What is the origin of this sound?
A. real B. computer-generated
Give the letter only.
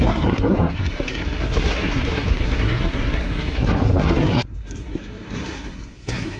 B